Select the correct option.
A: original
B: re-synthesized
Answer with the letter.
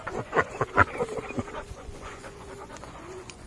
B